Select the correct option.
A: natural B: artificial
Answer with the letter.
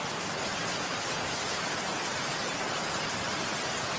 A